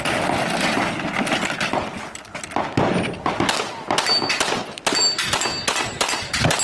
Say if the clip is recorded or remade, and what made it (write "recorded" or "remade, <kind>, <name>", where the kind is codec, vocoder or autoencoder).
recorded